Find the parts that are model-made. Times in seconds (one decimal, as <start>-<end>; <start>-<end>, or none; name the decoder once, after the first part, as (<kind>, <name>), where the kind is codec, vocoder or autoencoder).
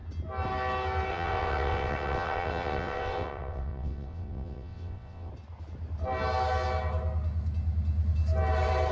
1.1-5.3 (vocoder, WaveNeXt)